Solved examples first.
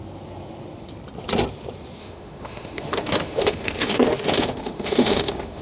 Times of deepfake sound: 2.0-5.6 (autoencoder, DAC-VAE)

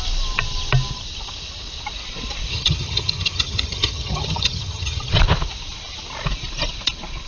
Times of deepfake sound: 2.5-5.2 (vocoder, HiFi-GAN)

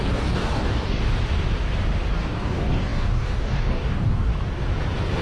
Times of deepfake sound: 0.0-1.0 (codec, DAC); 2.1-4.3

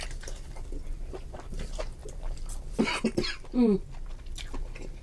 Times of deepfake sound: none

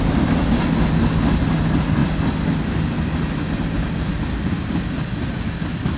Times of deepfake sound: none

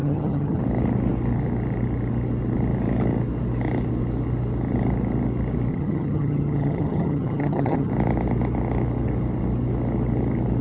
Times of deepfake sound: 0.0-0.6 (vocoder, HiFi-GAN); 5.7-7.9